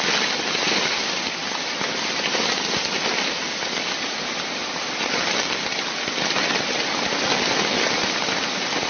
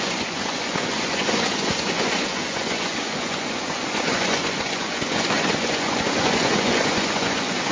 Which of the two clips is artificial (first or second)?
second